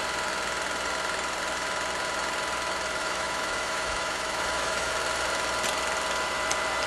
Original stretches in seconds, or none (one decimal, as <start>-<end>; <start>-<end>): 0.0-3.0; 4.9-6.9